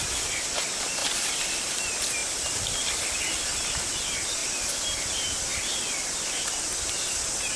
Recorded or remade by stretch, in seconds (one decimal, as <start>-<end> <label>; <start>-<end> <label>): 0.0-1.0 recorded; 1.0-1.8 remade; 1.8-2.2 recorded; 2.2-2.7 remade; 2.7-5.5 recorded; 5.5-7.1 remade; 7.1-7.6 recorded